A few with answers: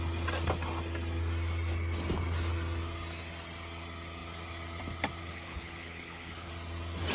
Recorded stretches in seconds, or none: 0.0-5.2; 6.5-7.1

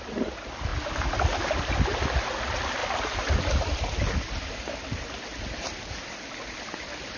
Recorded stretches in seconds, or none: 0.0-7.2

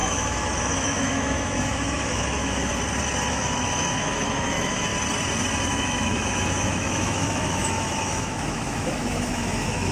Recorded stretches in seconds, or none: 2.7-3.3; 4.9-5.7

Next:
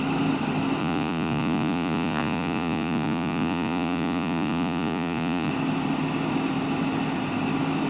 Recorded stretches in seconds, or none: 0.0-0.8; 5.5-7.9

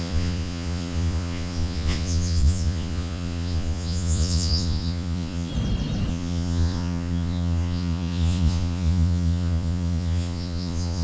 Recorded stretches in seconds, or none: 5.5-6.1